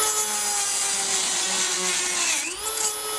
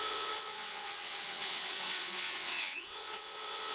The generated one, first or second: second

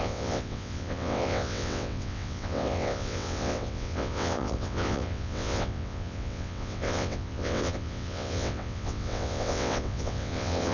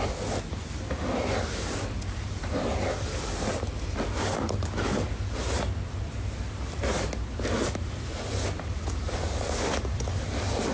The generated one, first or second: first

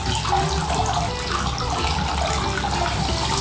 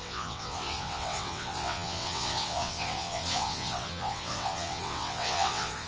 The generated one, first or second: second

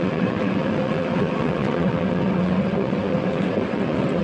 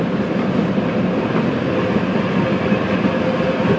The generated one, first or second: first